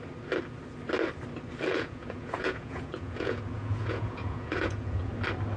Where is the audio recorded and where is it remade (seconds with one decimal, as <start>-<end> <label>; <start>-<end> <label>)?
0.0-1.7 recorded; 1.7-5.1 remade; 5.1-5.6 recorded